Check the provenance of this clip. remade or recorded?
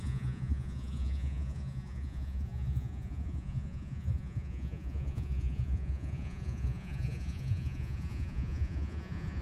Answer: remade